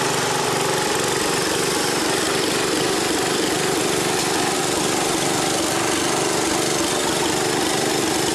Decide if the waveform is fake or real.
real